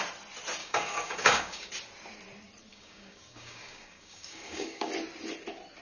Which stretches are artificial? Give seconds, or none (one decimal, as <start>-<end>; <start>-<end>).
0.6-1.7; 2.7-4.9